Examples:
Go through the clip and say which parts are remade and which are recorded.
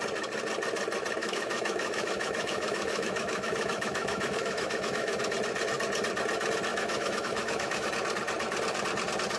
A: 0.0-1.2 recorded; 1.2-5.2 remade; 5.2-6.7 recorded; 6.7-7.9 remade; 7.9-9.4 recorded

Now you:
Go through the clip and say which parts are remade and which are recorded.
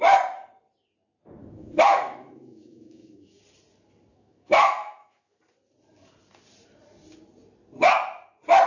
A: 0.0-1.4 recorded; 1.4-3.4 remade; 3.4-4.1 recorded; 4.1-5.4 remade; 5.4-8.7 recorded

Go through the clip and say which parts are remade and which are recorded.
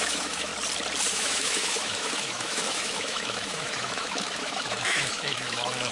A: 0.0-0.5 remade; 0.5-1.1 recorded; 1.1-5.9 remade